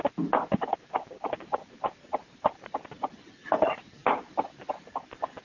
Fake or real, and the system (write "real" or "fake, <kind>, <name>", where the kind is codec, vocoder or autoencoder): real